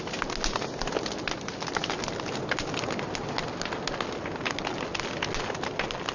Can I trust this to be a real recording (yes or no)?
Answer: yes